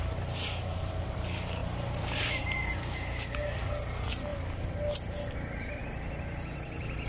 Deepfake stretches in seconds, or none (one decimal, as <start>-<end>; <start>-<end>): none